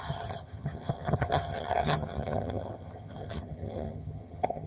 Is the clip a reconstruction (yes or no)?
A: yes